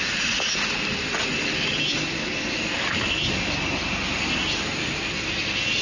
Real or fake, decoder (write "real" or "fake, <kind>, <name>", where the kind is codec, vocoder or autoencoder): real